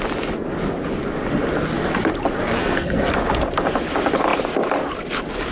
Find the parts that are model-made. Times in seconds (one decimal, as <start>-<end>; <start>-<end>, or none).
2.6-3.1